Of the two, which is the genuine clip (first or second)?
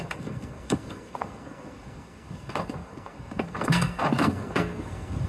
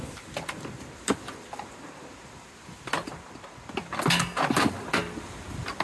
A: second